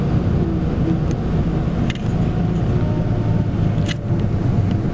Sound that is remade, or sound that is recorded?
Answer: recorded